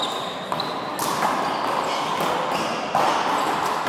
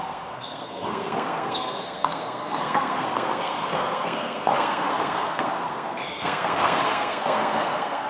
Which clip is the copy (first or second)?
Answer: second